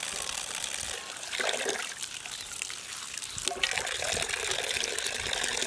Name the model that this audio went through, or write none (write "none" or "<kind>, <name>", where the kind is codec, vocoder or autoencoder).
none